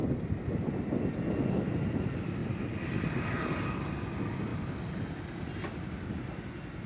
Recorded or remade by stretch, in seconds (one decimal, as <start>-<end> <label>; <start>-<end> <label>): 0.0-0.5 remade; 0.5-6.9 recorded